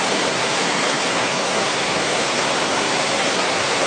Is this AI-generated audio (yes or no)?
yes